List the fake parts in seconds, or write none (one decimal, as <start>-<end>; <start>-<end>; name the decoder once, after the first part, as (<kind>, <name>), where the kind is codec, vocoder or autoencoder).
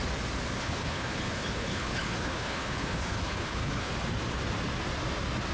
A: 0.6-3.9 (codec, HILCodec)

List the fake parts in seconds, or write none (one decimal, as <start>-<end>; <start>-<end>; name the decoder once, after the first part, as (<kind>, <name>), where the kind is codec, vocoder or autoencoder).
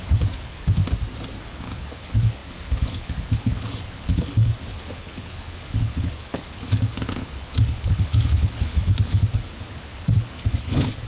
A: 0.0-0.8 (codec, HILCodec); 1.4-11.1